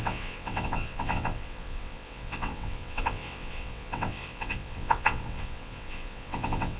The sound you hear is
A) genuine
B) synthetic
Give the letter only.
B